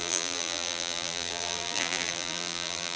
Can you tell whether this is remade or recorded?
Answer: remade